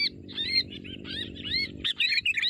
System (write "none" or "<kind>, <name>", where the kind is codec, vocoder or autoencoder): vocoder, BigVGAN v2